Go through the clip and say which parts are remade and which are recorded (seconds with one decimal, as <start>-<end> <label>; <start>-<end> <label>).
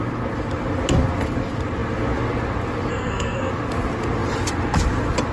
0.0-2.9 recorded; 2.9-3.5 remade; 3.5-5.3 recorded